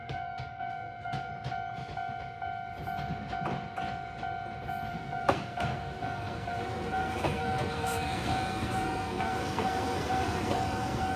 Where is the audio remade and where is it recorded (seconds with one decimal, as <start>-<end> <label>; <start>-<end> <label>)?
0.0-1.3 remade; 1.3-4.9 recorded; 4.9-11.2 remade

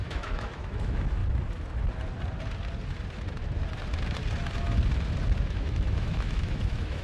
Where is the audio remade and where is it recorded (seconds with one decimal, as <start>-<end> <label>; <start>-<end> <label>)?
0.0-1.2 remade; 1.2-5.4 recorded; 5.4-7.0 remade

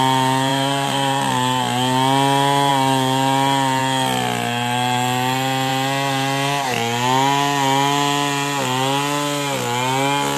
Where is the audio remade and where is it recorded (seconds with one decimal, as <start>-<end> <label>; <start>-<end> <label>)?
0.0-0.5 recorded; 0.5-1.3 remade; 1.3-10.4 recorded

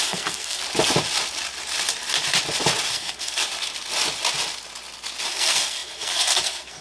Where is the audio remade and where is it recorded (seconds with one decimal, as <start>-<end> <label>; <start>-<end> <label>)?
0.0-0.6 remade; 0.6-2.9 recorded; 2.9-3.4 remade; 3.4-5.3 recorded; 5.3-6.8 remade

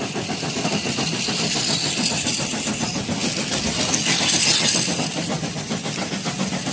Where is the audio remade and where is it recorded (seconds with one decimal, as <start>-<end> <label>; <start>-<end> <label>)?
0.0-6.7 recorded

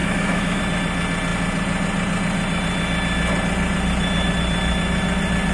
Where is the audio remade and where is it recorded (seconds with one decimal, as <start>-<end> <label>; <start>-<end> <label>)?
0.0-0.6 remade; 0.6-5.5 recorded

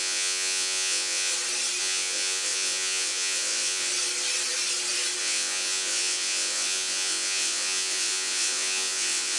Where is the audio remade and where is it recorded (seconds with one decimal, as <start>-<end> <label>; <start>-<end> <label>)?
0.0-1.3 remade; 1.3-1.8 recorded; 1.8-3.9 remade; 3.9-5.2 recorded; 5.2-9.4 remade